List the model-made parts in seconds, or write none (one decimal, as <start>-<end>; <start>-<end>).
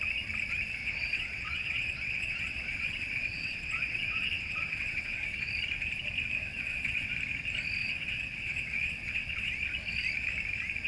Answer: 0.8-5.5; 6.5-7.1; 7.8-9.5